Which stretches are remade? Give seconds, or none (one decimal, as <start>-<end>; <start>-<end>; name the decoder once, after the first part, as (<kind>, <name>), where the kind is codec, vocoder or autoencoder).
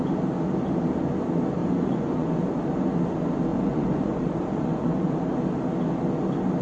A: 1.6-2.4 (vocoder, Vocos); 3.5-5.2